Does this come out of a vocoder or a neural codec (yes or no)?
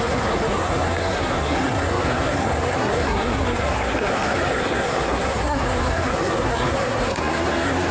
yes